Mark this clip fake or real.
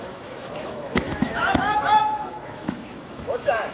fake